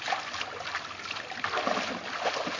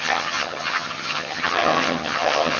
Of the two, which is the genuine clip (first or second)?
first